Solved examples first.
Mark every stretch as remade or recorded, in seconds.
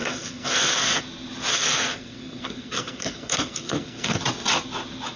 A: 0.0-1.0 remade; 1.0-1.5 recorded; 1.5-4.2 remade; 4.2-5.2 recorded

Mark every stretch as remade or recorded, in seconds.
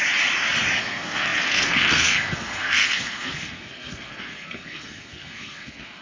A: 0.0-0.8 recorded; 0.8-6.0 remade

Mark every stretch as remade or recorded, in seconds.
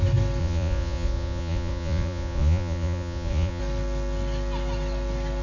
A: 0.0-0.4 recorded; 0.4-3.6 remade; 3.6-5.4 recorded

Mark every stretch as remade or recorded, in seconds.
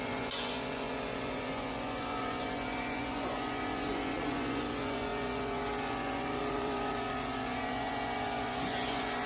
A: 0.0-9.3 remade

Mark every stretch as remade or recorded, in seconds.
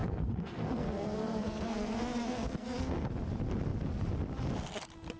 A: 0.0-3.1 remade; 3.1-5.2 recorded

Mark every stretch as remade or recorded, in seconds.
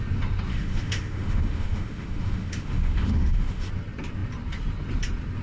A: 0.0-0.5 recorded; 0.5-3.7 remade; 3.7-5.4 recorded